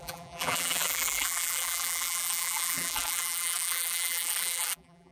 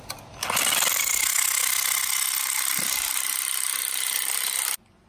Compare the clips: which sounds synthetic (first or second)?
first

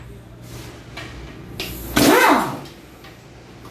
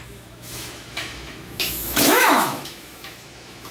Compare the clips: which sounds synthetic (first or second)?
second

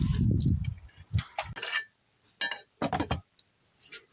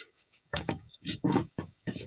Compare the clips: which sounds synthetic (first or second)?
second